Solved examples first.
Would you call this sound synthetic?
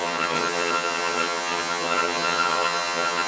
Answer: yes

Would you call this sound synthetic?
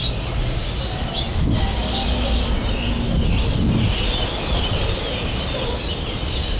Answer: no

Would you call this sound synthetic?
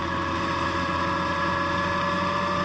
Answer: no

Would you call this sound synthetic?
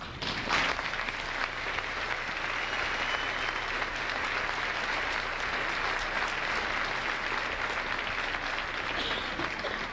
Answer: no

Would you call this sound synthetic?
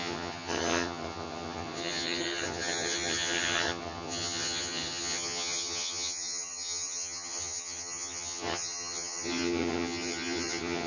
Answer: yes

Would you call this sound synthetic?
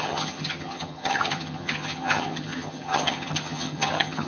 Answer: yes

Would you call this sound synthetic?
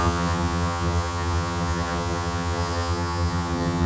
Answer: yes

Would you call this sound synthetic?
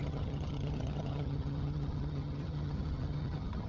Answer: yes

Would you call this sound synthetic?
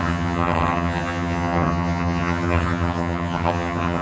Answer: yes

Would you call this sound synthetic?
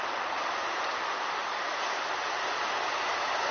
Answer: no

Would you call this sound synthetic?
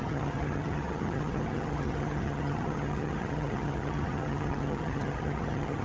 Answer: yes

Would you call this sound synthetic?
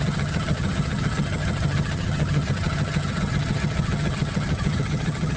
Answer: yes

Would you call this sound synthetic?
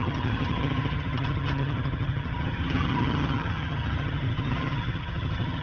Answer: yes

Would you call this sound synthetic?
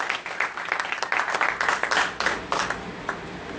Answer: no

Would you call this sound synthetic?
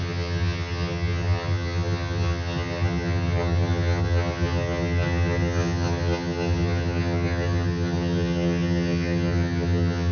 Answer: yes